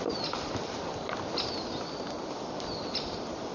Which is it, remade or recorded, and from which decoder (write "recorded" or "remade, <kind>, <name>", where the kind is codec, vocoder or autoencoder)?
recorded